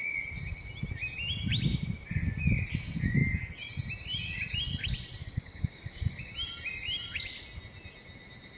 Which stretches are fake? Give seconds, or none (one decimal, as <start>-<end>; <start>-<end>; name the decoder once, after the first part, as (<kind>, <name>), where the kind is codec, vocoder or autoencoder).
5.2-6.2 (codec, DAC)